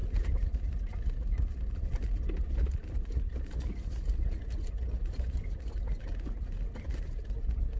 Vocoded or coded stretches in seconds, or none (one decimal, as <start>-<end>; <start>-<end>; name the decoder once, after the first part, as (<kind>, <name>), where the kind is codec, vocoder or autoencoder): 0.0-3.4 (vocoder, BigVGAN v2)